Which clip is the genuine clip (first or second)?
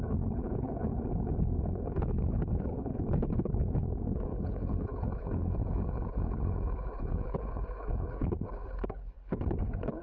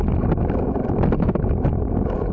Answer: second